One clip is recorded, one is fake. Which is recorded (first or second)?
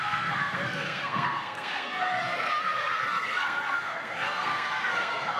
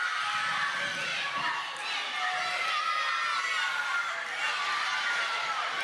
second